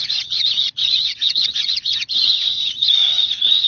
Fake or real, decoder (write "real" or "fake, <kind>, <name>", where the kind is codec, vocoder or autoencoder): fake, vocoder, Vocos